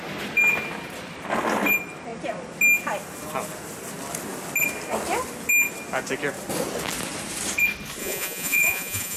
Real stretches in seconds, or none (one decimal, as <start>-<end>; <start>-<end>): 0.0-8.0